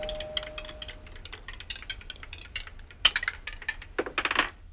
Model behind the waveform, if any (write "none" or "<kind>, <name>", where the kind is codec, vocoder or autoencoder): none